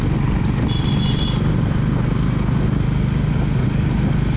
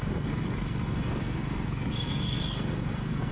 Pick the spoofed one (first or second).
second